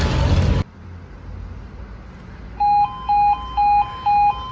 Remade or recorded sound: recorded